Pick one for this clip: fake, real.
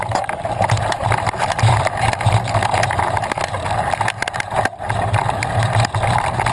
fake